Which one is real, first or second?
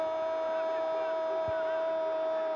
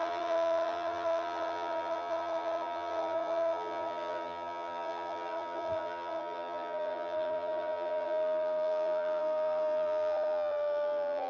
first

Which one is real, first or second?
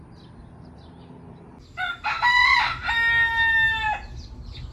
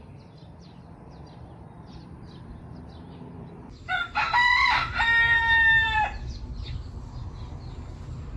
first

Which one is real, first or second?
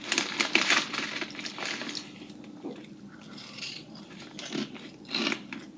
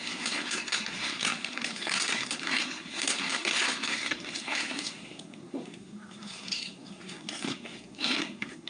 first